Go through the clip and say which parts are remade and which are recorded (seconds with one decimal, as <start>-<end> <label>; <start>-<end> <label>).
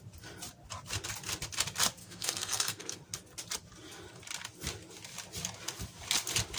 0.0-2.0 recorded; 2.0-3.0 remade; 3.0-6.6 recorded